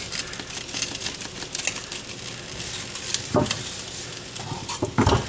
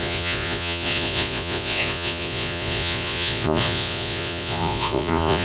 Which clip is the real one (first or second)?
first